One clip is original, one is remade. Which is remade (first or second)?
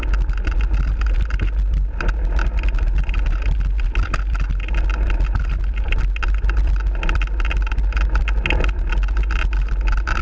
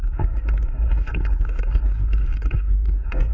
second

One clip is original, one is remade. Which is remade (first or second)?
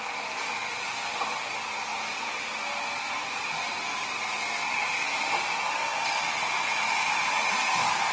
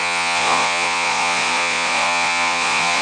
second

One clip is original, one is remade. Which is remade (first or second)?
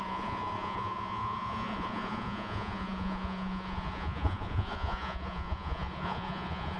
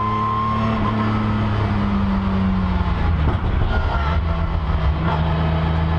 first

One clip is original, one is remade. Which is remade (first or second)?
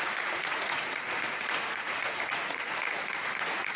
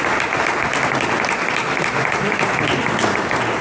first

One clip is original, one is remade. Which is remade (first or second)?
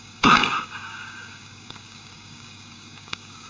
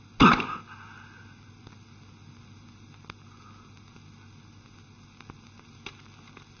first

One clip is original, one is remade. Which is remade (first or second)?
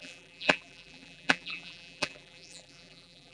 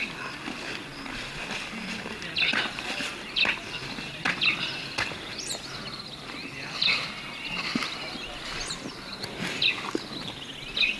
first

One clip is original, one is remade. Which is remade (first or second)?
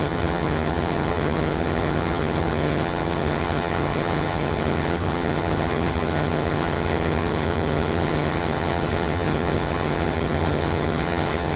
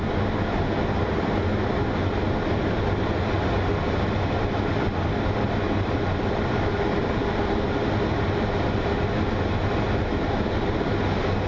first